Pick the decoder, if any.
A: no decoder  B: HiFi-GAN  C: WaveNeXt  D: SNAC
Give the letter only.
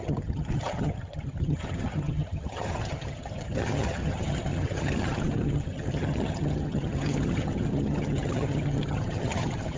B